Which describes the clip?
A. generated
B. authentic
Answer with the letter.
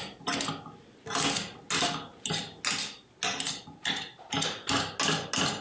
B